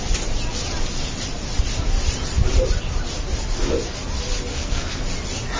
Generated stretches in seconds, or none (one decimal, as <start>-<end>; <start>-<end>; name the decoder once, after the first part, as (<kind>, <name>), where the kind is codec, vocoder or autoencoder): 4.5-5.0 (codec, SNAC)